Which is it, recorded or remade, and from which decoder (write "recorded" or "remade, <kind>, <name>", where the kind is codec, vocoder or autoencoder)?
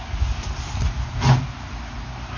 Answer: recorded